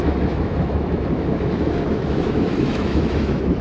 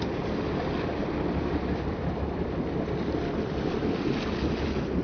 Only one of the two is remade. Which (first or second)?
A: first